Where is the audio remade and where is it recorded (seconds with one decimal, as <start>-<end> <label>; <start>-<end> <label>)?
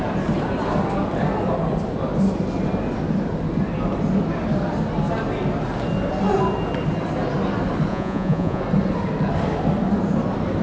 0.0-7.9 recorded; 7.9-8.6 remade; 8.6-10.6 recorded